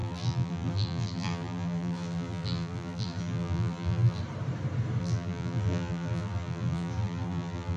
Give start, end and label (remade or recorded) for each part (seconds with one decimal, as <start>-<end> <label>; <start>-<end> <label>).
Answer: 0.0-4.2 remade; 4.2-5.0 recorded; 5.0-7.8 remade